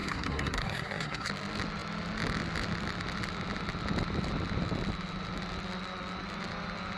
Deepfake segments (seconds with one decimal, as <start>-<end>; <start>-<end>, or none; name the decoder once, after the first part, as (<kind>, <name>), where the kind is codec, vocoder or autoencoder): 0.0-1.3 (codec, SNAC)